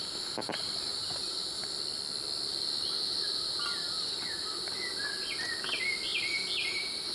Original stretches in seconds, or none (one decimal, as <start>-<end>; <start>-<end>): 0.0-7.1